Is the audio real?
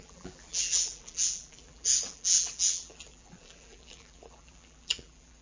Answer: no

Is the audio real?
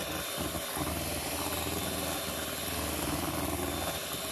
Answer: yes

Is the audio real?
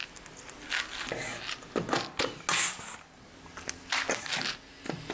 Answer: yes